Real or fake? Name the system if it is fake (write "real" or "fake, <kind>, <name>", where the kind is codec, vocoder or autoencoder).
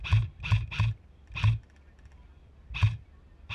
real